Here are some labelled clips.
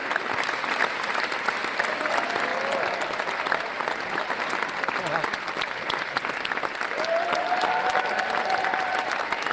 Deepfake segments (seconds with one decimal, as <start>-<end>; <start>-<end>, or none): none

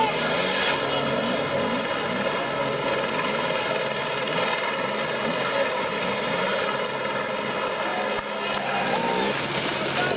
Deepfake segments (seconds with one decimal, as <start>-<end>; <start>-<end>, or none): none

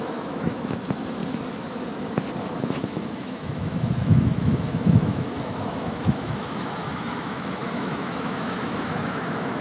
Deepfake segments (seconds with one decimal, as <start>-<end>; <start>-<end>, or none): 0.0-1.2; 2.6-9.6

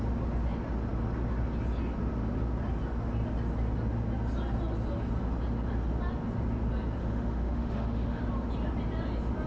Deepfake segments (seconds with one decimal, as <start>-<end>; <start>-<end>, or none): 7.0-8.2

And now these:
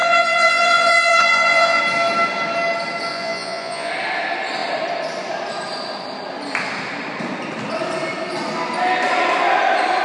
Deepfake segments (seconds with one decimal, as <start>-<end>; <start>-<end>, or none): 0.0-1.8; 3.1-3.9